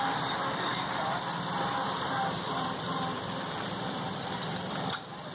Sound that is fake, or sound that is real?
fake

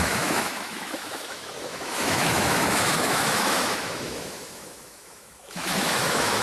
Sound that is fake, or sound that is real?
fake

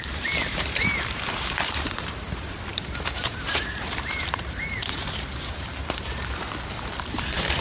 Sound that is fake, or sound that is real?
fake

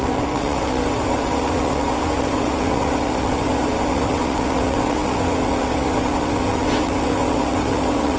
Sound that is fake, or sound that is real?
fake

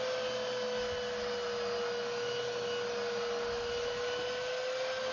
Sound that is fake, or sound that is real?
real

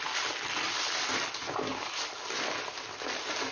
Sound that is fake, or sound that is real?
real